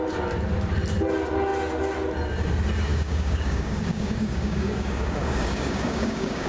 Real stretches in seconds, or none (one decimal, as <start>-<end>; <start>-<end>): 0.0-2.9